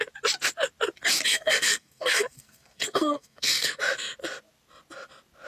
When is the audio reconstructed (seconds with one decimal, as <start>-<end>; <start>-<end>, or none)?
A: 1.3-3.8